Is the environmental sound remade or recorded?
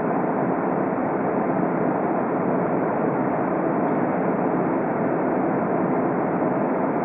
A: remade